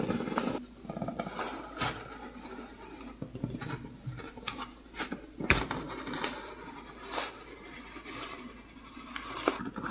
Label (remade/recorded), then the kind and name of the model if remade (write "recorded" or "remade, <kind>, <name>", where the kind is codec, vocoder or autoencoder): recorded